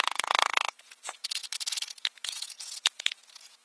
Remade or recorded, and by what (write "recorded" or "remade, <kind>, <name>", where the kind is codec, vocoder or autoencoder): remade, vocoder, Vocos